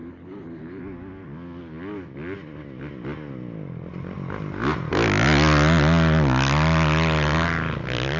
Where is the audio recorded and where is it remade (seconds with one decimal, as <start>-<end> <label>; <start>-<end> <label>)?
0.0-0.8 remade; 0.8-8.2 recorded